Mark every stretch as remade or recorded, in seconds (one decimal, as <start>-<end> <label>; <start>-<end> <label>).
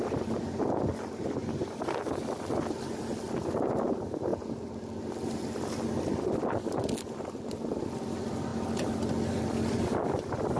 0.0-10.6 recorded